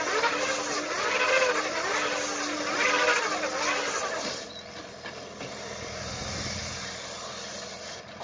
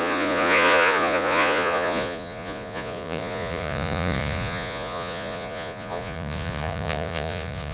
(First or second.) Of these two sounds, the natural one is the first